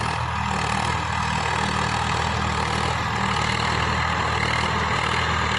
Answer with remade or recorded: recorded